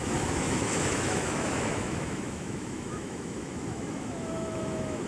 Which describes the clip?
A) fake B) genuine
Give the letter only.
A